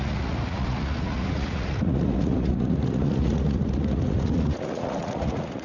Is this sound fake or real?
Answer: fake